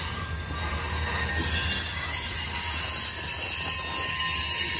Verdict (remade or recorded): recorded